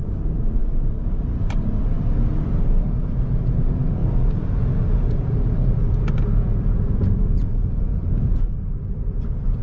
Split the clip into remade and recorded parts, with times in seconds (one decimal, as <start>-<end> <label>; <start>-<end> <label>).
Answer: 0.0-4.0 recorded; 4.0-8.5 remade; 8.5-9.6 recorded